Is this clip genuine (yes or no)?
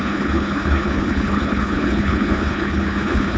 no